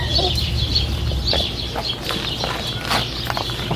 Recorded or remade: recorded